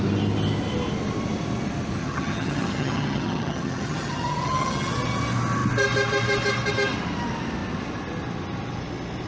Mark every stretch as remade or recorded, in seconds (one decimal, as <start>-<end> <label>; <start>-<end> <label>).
0.0-2.0 recorded; 2.0-4.9 remade; 4.9-9.3 recorded